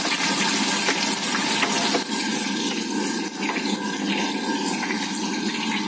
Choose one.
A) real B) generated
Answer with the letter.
A